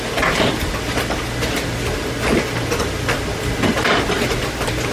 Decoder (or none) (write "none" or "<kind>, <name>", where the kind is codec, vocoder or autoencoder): vocoder, BigVGAN v2